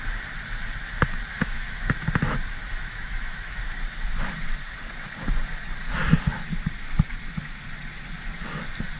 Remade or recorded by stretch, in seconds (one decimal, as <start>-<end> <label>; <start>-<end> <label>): 0.0-1.3 recorded; 1.3-1.9 remade; 1.9-2.6 recorded; 2.6-3.6 remade; 3.6-9.0 recorded